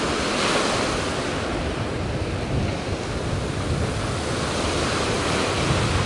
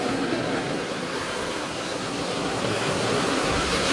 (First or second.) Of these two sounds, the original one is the first